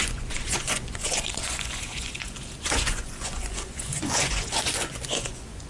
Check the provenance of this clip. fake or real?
fake